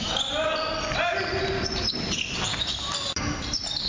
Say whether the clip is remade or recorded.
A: recorded